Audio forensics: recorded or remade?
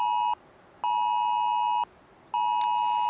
recorded